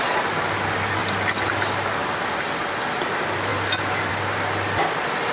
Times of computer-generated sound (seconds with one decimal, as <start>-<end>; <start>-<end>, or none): none